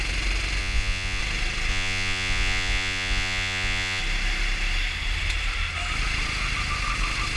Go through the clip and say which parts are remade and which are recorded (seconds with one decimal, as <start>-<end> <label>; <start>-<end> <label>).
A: 0.0-0.6 recorded; 0.6-1.2 remade; 1.2-1.7 recorded; 1.7-4.0 remade; 4.0-7.4 recorded